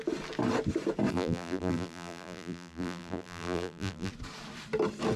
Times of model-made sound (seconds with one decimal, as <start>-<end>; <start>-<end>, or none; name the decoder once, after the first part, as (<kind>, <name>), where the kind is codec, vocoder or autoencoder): 1.1-4.1 (vocoder, BigVGAN v2)